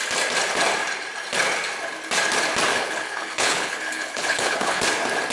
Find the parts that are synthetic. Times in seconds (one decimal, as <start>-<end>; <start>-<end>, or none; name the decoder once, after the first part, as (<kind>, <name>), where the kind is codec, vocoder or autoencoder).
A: 2.7-4.8 (codec, HILCodec)